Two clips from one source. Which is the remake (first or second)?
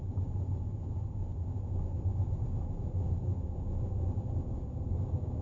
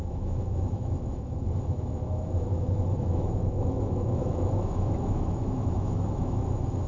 second